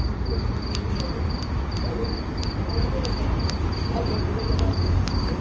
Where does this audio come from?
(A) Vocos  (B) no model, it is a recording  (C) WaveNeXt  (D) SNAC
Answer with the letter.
B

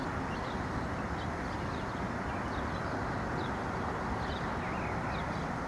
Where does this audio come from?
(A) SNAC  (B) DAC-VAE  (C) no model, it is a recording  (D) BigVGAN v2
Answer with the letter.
C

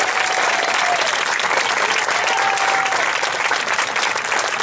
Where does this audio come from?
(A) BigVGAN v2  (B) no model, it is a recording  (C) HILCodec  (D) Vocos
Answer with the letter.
B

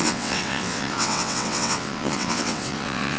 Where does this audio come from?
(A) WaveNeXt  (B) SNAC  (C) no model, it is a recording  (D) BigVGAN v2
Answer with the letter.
A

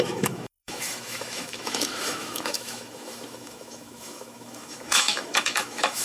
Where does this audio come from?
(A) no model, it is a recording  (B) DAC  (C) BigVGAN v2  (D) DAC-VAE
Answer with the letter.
D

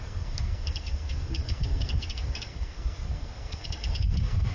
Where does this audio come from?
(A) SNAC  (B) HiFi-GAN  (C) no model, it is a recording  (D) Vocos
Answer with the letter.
A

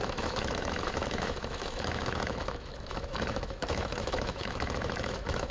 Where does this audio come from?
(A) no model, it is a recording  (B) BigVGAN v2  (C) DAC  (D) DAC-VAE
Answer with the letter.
D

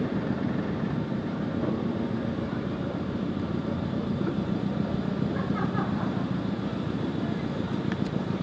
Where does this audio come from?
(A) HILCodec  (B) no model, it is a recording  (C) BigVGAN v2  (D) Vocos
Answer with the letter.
C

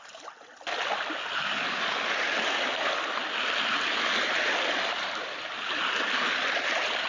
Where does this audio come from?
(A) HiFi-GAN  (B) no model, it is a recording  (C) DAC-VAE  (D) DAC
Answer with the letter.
B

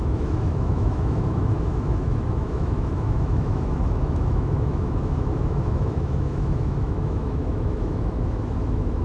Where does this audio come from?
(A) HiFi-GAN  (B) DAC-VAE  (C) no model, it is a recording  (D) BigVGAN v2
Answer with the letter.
B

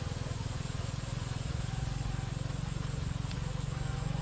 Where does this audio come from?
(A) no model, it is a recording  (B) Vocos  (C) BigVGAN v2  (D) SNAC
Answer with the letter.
B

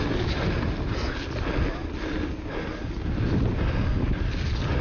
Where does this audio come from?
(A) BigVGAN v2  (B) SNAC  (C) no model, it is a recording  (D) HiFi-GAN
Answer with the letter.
C